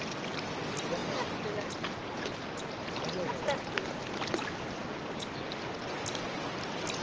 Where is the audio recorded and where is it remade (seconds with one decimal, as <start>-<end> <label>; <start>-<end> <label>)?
0.0-7.0 recorded